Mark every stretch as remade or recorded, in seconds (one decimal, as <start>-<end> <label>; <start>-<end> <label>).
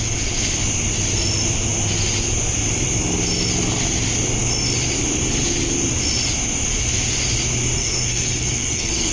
0.0-7.8 recorded; 7.8-9.1 remade